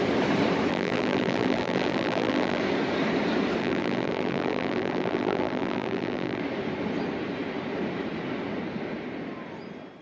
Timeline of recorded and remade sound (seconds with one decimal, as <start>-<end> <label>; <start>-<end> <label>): 0.0-0.7 recorded; 0.7-2.6 remade; 2.6-3.6 recorded; 3.6-6.4 remade; 6.4-10.0 recorded

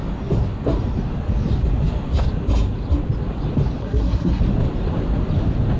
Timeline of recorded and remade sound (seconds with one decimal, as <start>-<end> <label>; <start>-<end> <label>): 0.0-3.8 recorded; 3.8-4.4 remade; 4.4-5.8 recorded

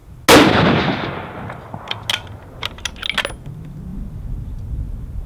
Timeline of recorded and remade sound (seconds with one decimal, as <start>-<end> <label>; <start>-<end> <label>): 0.0-5.3 recorded

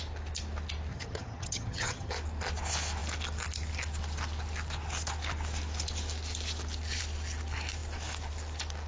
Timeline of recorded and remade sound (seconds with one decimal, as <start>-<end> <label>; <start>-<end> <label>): 0.0-0.9 recorded; 0.9-2.1 remade; 2.1-8.9 recorded

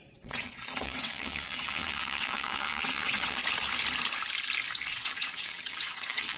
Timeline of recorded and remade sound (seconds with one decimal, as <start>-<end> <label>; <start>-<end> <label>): 0.0-3.4 remade; 3.4-4.9 recorded; 4.9-6.4 remade